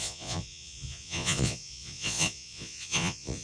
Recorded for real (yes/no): no